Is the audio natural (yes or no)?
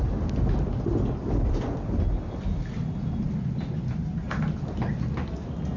yes